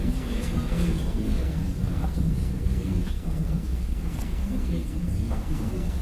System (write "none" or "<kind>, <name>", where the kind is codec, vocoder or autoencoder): codec, SNAC